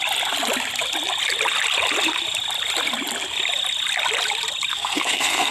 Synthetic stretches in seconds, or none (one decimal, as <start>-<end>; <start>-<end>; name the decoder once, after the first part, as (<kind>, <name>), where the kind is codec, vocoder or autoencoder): 4.7-5.5 (codec, SNAC)